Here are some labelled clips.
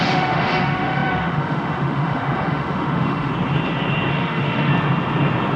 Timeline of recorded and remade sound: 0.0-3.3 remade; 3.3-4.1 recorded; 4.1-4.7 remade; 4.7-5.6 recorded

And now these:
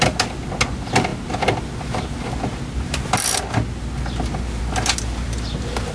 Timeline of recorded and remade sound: 0.0-5.9 recorded

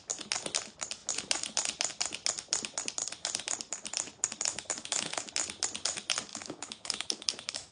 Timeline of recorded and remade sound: 0.0-4.5 recorded; 4.5-5.3 remade; 5.3-6.3 recorded; 6.3-7.7 remade

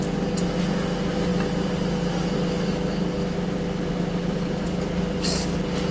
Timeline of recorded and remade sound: 0.0-5.9 recorded